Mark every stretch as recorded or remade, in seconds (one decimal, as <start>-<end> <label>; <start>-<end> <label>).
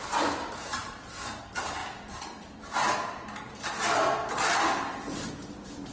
0.0-0.8 recorded; 0.8-1.4 remade; 1.4-1.8 recorded; 1.8-5.3 remade; 5.3-5.9 recorded